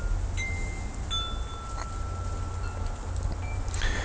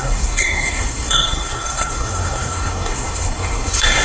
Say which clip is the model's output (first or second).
second